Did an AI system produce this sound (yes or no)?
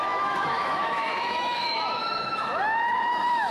yes